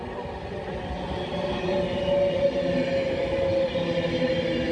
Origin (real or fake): real